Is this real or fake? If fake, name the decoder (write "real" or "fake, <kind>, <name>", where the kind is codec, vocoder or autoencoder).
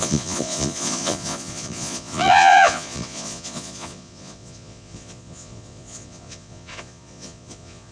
fake, vocoder, Vocos